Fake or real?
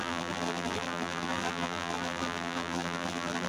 fake